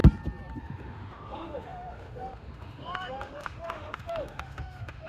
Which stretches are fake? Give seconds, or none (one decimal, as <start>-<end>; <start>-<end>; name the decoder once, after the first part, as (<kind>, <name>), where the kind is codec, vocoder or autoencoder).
0.6-5.1 (autoencoder, DAC-VAE)